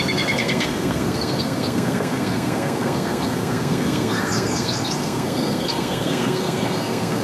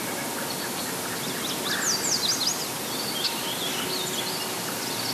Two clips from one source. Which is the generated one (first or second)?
first